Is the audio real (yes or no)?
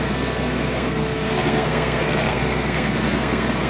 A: no